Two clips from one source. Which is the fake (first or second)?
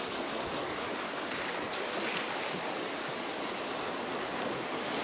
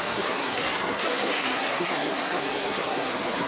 second